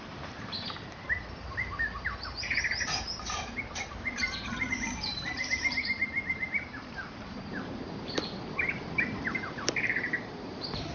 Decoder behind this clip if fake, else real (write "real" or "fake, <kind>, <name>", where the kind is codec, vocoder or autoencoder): fake, vocoder, BigVGAN v2